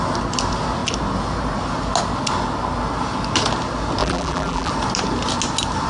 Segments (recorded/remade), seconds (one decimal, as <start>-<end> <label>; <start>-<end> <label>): 0.0-4.0 recorded; 4.0-4.7 remade; 4.7-5.9 recorded